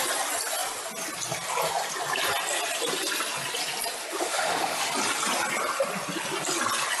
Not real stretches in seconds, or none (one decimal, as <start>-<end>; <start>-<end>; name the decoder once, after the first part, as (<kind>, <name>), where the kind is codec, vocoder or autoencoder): 4.0-4.9 (autoencoder, DAC-VAE)

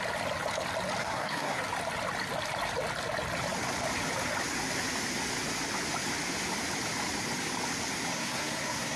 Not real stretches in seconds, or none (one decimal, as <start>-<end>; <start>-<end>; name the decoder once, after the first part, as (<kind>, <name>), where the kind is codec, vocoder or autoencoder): 1.0-1.6 (codec, SNAC); 8.1-9.0

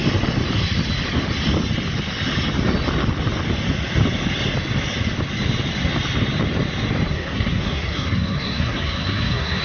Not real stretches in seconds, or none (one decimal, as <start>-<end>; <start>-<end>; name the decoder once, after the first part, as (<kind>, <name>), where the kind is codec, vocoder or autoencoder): 7.1-9.6 (codec, SNAC)

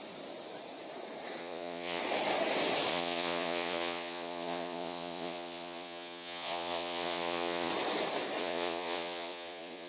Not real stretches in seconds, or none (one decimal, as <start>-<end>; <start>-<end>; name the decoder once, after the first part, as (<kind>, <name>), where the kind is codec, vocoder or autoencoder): 1.4-2.0 (vocoder, Vocos); 2.9-7.7; 8.4-9.9

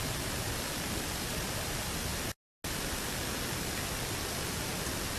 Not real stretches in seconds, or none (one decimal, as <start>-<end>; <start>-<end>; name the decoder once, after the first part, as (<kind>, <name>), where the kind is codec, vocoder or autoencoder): none

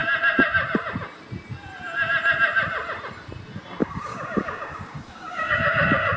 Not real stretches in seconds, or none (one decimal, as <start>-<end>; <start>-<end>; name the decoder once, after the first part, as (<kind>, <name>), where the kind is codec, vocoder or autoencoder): 3.8-6.2 (codec, DAC)

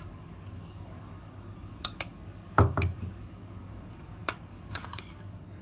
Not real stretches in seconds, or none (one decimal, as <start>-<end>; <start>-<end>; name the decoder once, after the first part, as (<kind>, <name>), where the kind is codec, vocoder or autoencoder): 0.0-5.6 (codec, DAC)

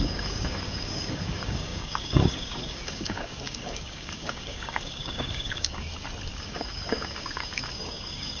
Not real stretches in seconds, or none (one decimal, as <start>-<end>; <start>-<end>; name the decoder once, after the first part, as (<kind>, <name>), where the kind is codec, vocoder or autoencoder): 0.0-5.9 (codec, DAC); 6.4-8.4